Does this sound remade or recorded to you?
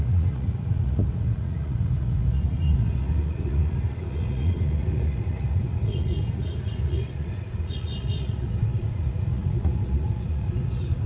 remade